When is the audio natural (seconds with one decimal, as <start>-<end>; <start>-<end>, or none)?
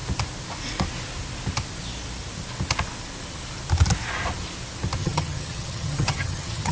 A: 0.0-5.0